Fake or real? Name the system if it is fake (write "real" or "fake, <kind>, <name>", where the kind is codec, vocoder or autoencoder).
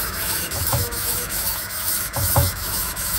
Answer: fake, autoencoder, DAC-VAE